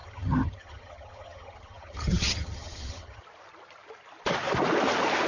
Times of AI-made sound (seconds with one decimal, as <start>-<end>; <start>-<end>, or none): 0.0-3.2